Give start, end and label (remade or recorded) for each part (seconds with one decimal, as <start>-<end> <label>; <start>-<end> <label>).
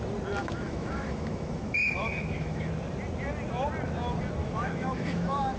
0.0-0.4 recorded; 0.4-2.7 remade; 2.7-4.4 recorded; 4.4-5.6 remade